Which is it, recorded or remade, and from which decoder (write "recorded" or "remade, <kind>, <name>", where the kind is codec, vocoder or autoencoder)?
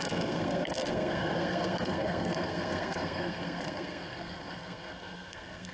remade, codec, SNAC